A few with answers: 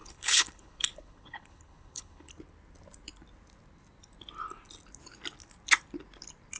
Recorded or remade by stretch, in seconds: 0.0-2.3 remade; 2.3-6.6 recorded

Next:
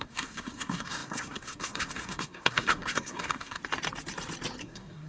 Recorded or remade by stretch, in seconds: 0.0-3.6 remade; 3.6-4.6 recorded; 4.6-5.1 remade

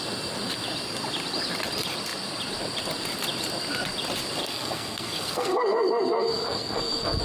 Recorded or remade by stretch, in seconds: 0.0-4.4 recorded; 4.4-7.2 remade

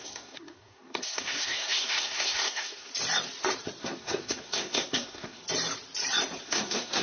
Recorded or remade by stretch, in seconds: 0.0-2.9 remade; 2.9-3.8 recorded; 3.8-5.4 remade; 5.4-6.4 recorded; 6.4-7.0 remade

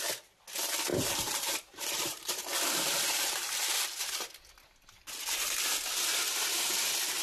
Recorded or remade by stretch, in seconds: 0.0-0.9 recorded; 0.9-4.2 remade; 4.2-7.2 recorded

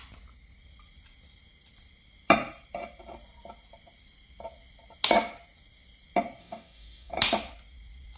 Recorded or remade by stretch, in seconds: 0.0-6.4 recorded; 6.4-7.1 remade; 7.1-8.2 recorded

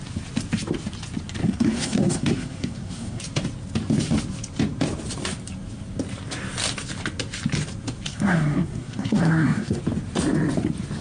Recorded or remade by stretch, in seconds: 0.0-1.4 recorded; 1.4-3.2 remade; 3.2-8.1 recorded; 8.1-9.8 remade; 9.8-11.0 recorded

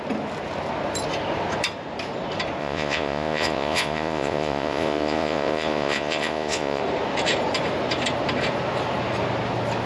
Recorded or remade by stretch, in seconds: 0.0-2.6 recorded; 2.6-6.8 remade; 6.8-9.9 recorded